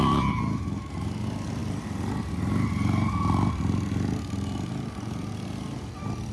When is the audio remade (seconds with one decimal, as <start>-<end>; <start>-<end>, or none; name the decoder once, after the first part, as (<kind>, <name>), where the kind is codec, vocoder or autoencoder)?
none

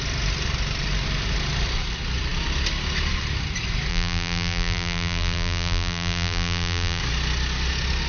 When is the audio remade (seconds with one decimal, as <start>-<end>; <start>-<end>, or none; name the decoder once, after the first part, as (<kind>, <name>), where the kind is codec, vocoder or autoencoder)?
3.9-7.0 (vocoder, BigVGAN v2)

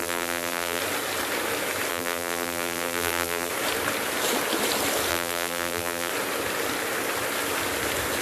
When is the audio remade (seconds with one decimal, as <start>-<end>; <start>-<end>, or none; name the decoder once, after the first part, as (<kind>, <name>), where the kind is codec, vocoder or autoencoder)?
0.0-0.8 (vocoder, BigVGAN v2); 1.9-3.5; 5.1-6.1

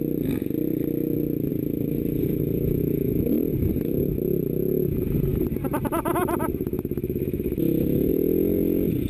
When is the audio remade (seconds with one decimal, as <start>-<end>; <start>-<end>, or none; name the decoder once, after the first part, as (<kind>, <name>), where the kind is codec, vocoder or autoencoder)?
1.5-2.8 (vocoder, BigVGAN v2)

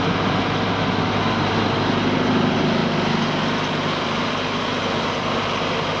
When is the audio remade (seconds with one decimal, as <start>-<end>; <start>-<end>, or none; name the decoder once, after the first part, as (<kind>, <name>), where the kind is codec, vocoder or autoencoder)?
none